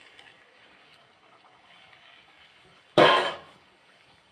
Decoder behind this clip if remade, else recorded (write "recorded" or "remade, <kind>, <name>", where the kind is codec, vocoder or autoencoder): remade, codec, DAC